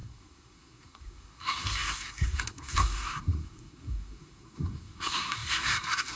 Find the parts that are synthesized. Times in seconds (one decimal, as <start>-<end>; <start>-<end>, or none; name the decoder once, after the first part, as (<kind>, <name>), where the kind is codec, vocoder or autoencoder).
0.0-6.2 (codec, SNAC)